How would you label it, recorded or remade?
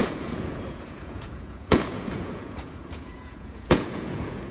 remade